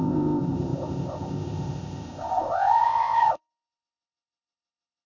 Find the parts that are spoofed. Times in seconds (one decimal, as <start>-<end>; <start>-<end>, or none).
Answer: 0.0-5.1